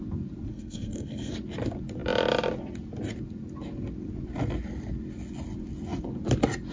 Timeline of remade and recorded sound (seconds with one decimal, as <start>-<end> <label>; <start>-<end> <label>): 0.0-0.5 recorded; 0.5-1.3 remade; 1.3-6.7 recorded